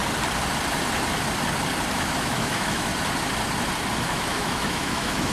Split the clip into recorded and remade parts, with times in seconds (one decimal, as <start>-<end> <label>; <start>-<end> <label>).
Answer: 0.0-1.9 recorded; 1.9-2.9 remade; 2.9-4.0 recorded; 4.0-5.3 remade